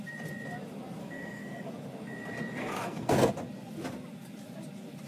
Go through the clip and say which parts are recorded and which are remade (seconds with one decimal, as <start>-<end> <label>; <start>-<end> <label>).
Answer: 0.0-1.0 recorded; 1.0-1.7 remade; 1.7-2.6 recorded; 2.6-3.3 remade; 3.3-5.1 recorded